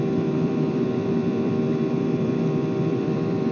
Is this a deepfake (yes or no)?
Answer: yes